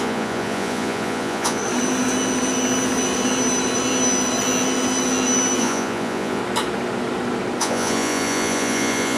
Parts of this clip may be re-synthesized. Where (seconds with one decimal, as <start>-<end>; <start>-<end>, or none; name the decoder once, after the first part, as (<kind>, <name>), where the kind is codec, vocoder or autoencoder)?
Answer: 0.0-1.6 (vocoder, Vocos); 5.6-6.4; 7.6-9.2